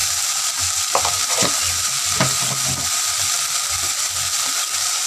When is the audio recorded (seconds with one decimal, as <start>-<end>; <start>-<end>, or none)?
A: 0.0-5.1